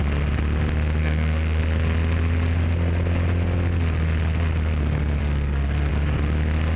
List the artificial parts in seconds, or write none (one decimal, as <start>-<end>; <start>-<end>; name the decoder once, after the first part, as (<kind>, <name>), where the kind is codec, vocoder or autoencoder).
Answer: 1.0-1.6 (codec, SNAC); 5.2-5.9